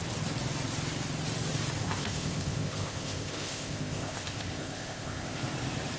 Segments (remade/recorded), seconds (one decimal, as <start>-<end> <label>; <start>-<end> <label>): 0.0-1.8 recorded; 1.8-5.4 remade; 5.4-6.0 recorded